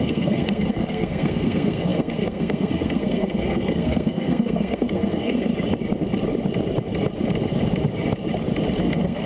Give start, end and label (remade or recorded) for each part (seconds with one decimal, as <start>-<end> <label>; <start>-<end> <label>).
0.0-5.5 remade; 5.5-8.8 recorded; 8.8-9.3 remade